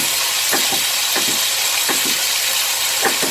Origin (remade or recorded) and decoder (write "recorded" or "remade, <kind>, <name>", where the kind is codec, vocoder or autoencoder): recorded